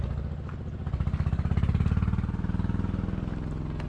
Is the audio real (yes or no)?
yes